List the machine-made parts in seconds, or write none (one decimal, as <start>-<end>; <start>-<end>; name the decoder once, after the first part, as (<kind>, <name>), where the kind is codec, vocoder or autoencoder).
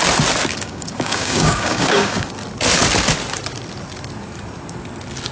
0.5-2.3 (codec, DAC)